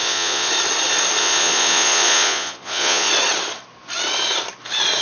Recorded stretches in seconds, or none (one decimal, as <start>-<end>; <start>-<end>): 0.5-1.2; 3.1-5.0